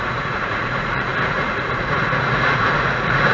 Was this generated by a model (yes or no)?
yes